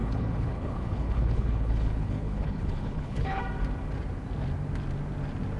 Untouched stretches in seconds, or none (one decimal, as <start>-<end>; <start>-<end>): 3.4-5.6